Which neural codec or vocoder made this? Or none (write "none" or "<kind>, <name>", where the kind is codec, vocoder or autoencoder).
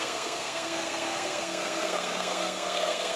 codec, SNAC